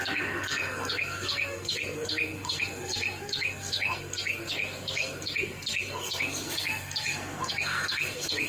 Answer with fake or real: fake